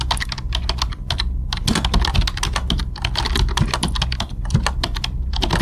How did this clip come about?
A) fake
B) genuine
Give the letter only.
B